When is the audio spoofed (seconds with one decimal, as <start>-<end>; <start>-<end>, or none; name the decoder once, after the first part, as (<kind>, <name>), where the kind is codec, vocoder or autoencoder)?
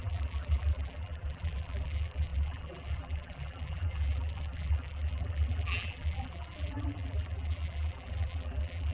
0.0-8.9 (vocoder, BigVGAN v2)